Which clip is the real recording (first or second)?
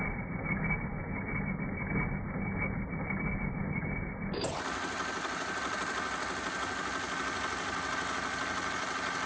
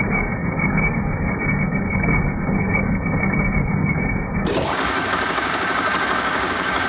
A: first